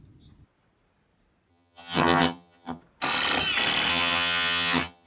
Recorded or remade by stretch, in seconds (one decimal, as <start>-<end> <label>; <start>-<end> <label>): 0.0-1.5 recorded; 1.5-2.8 remade; 2.8-3.9 recorded; 3.9-5.1 remade